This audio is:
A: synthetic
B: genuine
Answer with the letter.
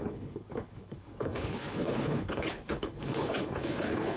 A